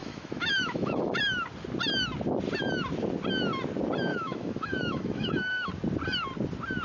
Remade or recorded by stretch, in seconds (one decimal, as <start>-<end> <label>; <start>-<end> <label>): 0.0-1.2 remade; 1.2-4.1 recorded; 4.1-5.7 remade; 5.7-6.8 recorded